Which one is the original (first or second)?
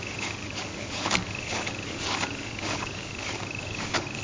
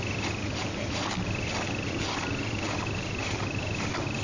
second